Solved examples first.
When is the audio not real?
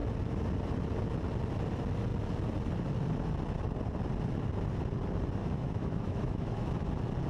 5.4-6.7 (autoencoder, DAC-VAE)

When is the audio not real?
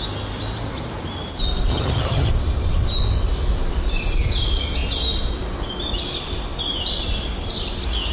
1.7-2.3 (vocoder, HiFi-GAN)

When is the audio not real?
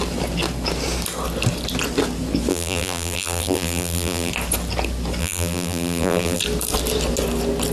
2.5-4.3 (vocoder, BigVGAN v2); 5.2-6.4